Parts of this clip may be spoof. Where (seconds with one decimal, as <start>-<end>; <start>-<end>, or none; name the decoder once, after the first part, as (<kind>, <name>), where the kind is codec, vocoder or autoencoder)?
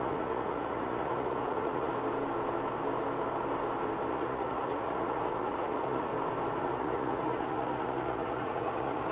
0.0-1.9 (vocoder, Vocos); 4.1-6.1; 6.6-9.1